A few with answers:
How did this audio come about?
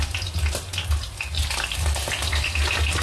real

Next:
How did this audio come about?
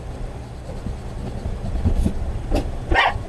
real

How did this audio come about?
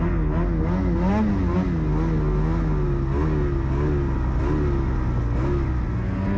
real